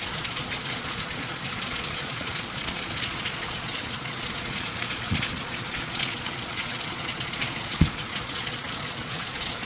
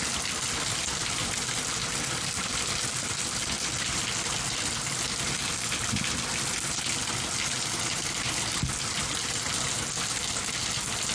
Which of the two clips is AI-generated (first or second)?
first